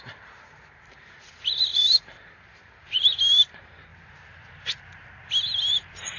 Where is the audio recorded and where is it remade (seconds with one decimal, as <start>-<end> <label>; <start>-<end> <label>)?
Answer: 0.0-3.9 remade; 3.9-5.7 recorded; 5.7-6.2 remade